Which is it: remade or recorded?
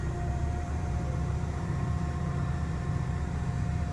remade